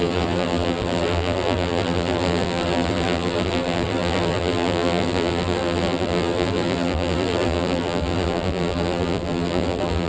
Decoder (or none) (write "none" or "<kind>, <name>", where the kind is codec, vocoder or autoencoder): vocoder, BigVGAN v2